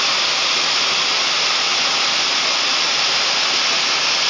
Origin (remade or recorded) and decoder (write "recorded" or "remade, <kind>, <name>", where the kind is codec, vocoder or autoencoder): recorded